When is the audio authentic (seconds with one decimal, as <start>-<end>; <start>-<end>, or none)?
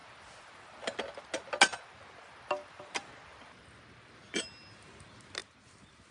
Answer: 0.0-6.1